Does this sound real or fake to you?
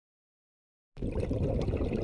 real